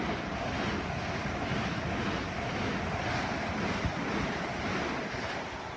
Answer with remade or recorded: recorded